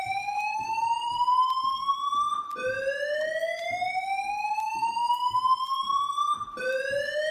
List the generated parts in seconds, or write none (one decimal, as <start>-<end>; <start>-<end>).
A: none